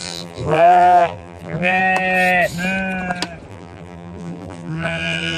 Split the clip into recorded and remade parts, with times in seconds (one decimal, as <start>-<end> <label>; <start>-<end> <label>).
0.0-1.8 remade; 1.8-3.5 recorded; 3.5-5.4 remade